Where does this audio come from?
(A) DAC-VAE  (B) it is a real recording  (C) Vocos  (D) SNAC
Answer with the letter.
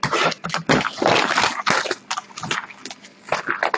B